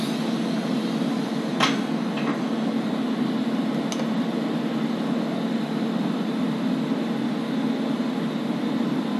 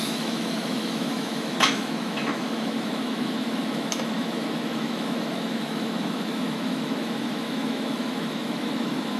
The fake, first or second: second